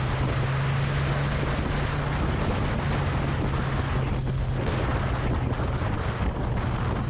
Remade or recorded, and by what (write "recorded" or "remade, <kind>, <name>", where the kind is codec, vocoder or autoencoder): recorded